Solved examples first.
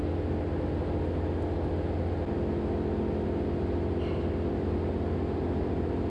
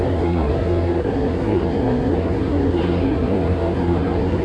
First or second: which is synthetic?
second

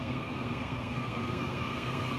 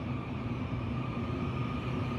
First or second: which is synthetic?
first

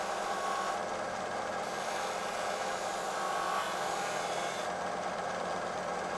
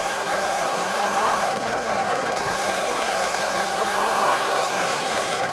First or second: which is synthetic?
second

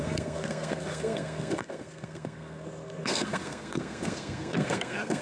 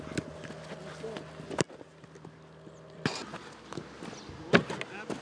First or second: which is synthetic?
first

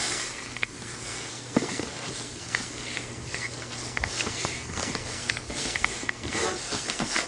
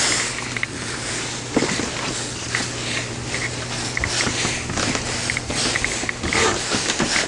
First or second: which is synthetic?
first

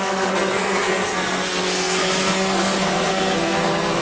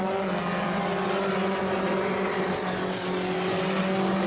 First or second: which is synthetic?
first